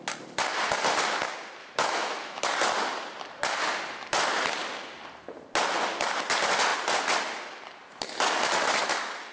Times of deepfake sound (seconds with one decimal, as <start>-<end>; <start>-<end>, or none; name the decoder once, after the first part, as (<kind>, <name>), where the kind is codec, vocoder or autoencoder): 1.6-2.4 (autoencoder, DAC-VAE)